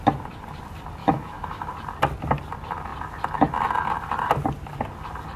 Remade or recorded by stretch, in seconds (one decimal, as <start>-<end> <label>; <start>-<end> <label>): 0.0-1.0 recorded; 1.0-1.7 remade; 1.7-5.4 recorded